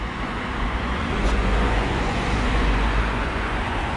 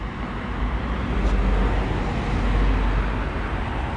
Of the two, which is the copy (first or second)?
first